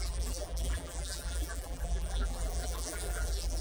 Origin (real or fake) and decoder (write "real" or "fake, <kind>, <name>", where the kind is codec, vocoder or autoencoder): fake, vocoder, BigVGAN v2